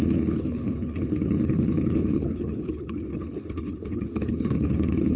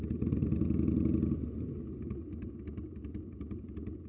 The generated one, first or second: first